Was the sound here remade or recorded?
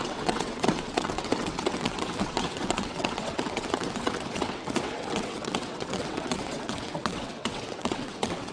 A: remade